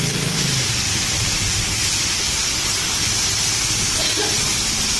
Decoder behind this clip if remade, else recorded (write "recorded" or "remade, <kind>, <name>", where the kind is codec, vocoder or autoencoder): recorded